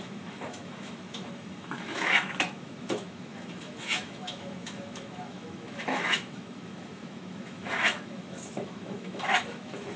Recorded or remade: remade